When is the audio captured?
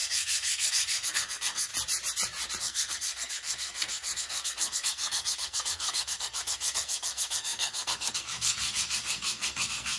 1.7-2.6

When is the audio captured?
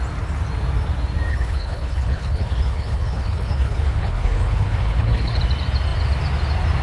0.0-1.3; 5.4-6.8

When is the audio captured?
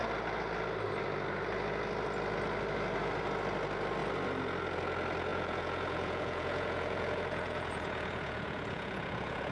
0.0-5.3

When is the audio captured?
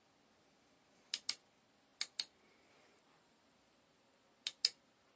0.0-5.2